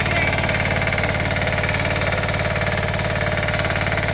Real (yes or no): yes